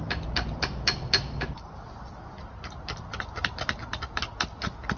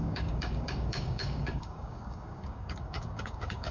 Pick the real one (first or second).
first